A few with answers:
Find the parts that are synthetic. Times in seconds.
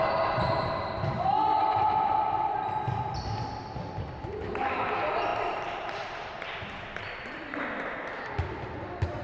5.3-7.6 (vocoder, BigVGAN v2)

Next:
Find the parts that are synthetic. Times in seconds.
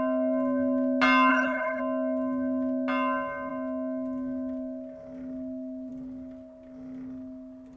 1.3-1.8 (codec, HILCodec)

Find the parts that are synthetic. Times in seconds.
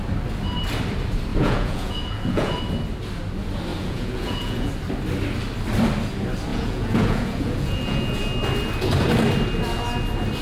1.3-2.6 (vocoder, Vocos); 3.7-4.7; 6.5-8.2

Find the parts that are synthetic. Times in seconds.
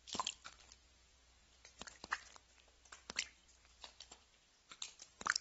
3.4-4.8 (vocoder, BigVGAN v2)